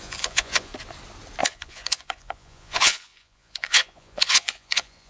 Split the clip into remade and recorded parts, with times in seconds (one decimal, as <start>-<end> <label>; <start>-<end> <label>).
0.0-0.7 remade; 0.7-1.4 recorded; 1.4-5.1 remade